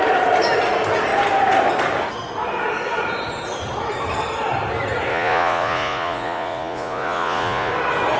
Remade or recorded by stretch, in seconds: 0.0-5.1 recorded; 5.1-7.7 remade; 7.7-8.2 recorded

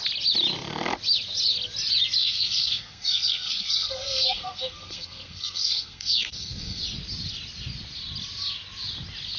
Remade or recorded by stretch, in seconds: 0.0-2.2 recorded; 2.2-6.8 remade; 6.8-9.4 recorded

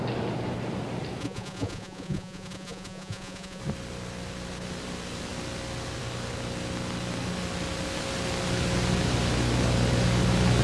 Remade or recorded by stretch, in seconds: 0.0-1.2 recorded; 1.2-3.6 remade; 3.6-10.6 recorded

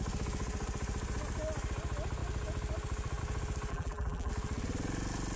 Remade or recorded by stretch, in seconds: 0.0-3.7 recorded; 3.7-4.3 remade; 4.3-5.4 recorded

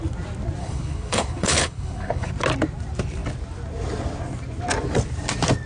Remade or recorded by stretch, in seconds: 0.0-0.6 recorded; 0.6-2.3 remade; 2.3-5.7 recorded